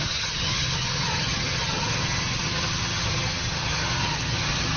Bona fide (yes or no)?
no